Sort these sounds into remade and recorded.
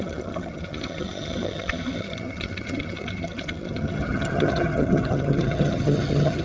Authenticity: remade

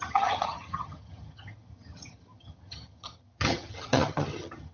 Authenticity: remade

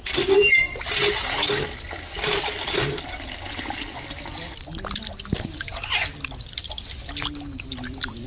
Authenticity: recorded